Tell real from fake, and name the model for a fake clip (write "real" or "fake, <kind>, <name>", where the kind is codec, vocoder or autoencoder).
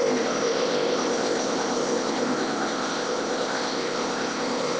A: fake, codec, ZipCodec